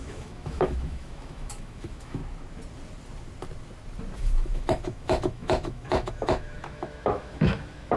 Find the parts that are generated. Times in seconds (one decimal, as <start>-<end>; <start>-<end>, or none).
0.0-2.2; 4.2-8.0